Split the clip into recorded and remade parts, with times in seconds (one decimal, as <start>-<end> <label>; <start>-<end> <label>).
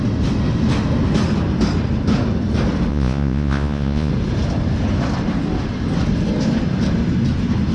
0.0-2.9 recorded; 2.9-4.1 remade; 4.1-7.7 recorded